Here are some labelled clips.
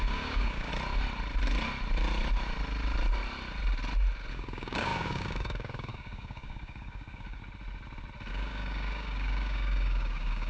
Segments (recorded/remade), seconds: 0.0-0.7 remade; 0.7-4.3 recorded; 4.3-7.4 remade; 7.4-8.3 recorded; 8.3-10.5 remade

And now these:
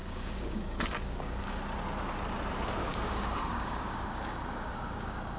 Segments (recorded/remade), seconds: 0.0-1.6 remade; 1.6-2.9 recorded; 2.9-5.4 remade